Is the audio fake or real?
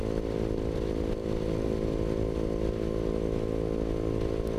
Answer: real